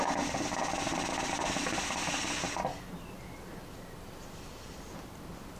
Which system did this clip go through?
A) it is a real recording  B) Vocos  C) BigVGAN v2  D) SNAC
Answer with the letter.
A